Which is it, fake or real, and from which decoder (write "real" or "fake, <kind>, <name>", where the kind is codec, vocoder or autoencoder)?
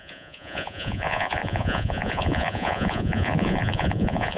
fake, vocoder, Vocos